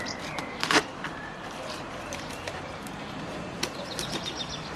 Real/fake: fake